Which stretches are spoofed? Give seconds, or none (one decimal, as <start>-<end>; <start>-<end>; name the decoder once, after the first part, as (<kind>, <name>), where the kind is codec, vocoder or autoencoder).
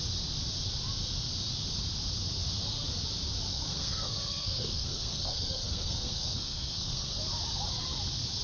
3.5-7.2 (codec, SNAC)